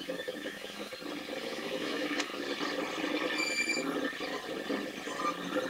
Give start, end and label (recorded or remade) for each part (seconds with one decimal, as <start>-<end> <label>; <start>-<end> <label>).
0.0-0.9 remade; 0.9-1.4 recorded; 1.4-2.3 remade; 2.3-5.7 recorded